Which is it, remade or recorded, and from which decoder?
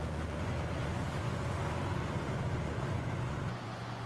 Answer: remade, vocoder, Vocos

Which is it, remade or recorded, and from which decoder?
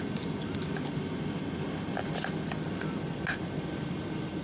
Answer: recorded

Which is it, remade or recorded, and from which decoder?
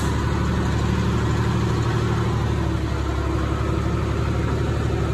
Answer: recorded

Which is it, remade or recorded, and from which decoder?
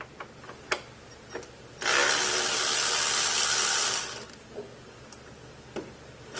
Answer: recorded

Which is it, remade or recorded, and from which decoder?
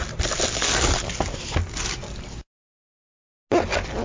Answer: recorded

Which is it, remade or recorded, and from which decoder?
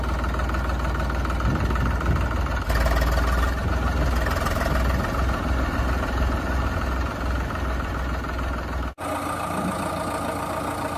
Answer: recorded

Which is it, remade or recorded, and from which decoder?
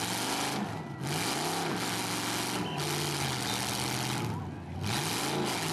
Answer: recorded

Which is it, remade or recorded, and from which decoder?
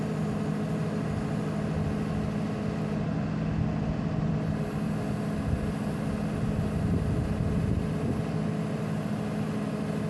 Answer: recorded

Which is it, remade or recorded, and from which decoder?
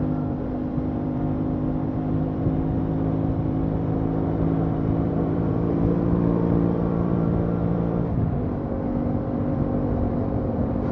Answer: remade, vocoder, BigVGAN v2